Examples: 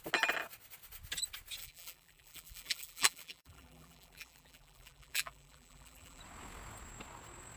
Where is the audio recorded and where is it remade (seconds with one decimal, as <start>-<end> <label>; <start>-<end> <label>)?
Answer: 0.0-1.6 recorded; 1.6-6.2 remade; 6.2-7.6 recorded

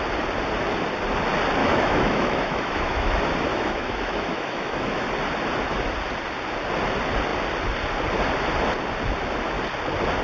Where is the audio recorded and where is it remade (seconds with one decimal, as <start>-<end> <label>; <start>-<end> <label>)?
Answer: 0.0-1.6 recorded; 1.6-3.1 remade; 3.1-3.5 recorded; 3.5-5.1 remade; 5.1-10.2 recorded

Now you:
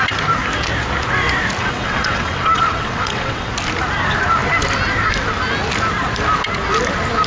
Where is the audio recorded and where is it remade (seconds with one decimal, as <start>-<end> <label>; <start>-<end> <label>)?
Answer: 0.0-1.6 recorded; 1.6-3.5 remade; 3.5-7.3 recorded

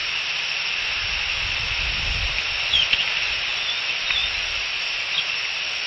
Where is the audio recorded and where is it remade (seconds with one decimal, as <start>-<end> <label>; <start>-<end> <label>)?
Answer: 0.0-5.9 recorded

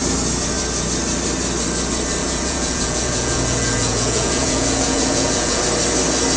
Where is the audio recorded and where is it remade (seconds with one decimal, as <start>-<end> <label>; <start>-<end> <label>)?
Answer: 0.0-2.2 recorded; 2.2-5.6 remade; 5.6-6.4 recorded

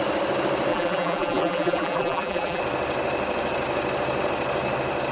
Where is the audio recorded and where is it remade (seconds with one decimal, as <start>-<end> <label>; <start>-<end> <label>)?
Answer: 0.0-0.7 recorded; 0.7-2.6 remade; 2.6-5.1 recorded

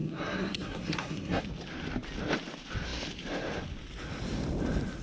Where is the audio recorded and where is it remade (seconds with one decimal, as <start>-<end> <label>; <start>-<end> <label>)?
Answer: 0.0-1.4 remade; 1.4-5.0 recorded

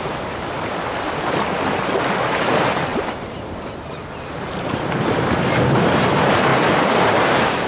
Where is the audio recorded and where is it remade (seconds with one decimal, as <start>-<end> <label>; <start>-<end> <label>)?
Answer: 0.0-7.7 recorded